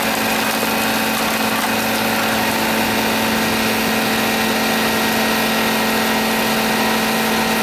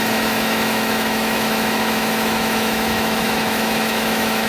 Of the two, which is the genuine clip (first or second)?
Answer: first